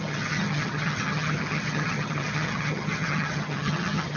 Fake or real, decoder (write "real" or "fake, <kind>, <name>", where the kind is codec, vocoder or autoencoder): fake, vocoder, HiFi-GAN